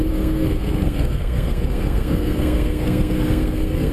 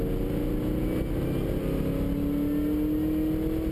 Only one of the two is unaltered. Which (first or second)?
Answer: second